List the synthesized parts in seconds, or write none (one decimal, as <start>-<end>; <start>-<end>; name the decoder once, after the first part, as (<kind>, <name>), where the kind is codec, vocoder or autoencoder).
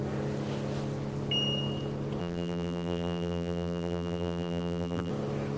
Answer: 2.2-5.1 (vocoder, BigVGAN v2)